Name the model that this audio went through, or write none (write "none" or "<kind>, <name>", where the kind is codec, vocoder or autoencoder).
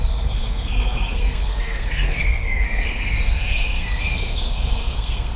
codec, SNAC